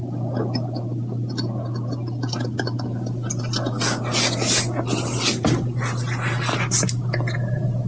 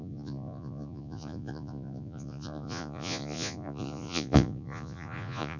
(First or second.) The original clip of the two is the first